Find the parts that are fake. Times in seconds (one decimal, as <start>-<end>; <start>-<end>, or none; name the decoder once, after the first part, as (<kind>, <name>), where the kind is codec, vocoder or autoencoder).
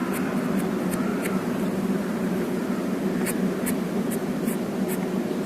1.1-4.4 (vocoder, BigVGAN v2)